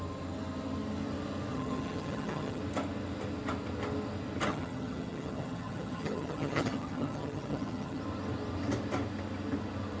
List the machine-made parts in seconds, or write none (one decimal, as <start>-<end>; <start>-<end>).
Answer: 1.5-2.6; 4.5-8.0